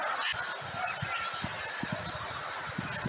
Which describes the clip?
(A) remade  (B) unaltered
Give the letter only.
B